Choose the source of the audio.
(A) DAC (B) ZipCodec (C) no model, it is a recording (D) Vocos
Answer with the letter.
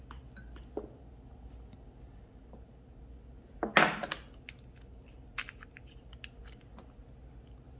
C